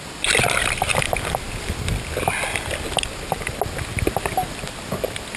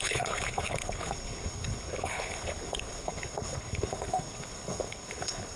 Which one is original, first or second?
first